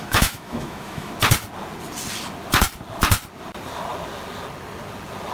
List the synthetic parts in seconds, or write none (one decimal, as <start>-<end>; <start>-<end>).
0.0-1.1